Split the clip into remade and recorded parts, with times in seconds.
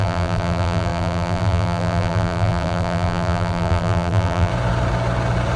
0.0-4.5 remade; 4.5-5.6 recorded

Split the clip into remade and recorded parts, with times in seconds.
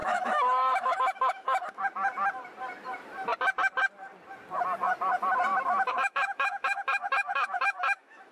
0.0-1.8 remade; 1.8-5.5 recorded; 5.5-8.3 remade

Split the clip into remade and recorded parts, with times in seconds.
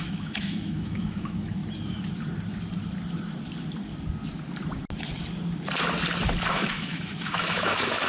0.0-1.6 remade; 1.6-6.5 recorded; 6.5-8.1 remade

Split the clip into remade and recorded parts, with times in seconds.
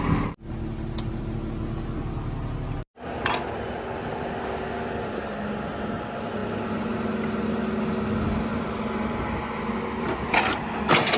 0.0-11.2 recorded